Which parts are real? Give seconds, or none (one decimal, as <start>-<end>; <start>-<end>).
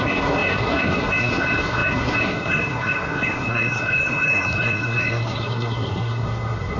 none